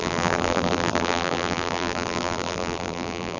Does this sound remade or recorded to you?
remade